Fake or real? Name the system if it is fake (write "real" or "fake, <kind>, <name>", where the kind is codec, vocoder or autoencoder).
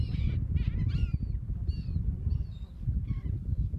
fake, vocoder, BigVGAN v2